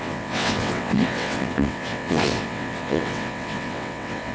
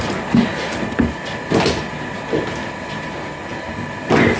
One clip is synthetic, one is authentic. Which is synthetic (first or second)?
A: first